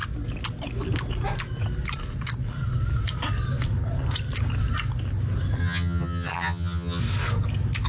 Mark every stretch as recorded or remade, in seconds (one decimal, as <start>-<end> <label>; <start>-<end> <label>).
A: 0.0-5.6 recorded; 5.6-7.0 remade; 7.0-7.9 recorded